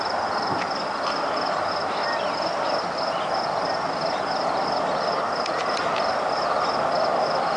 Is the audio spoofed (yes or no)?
no